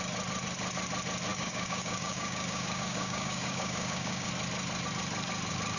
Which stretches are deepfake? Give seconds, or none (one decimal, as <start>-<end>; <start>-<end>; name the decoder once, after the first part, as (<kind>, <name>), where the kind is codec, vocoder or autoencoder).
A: 1.3-4.3 (codec, DAC)